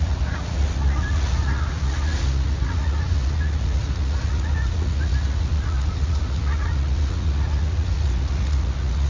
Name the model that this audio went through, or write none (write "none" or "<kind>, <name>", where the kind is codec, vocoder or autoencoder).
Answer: vocoder, Vocos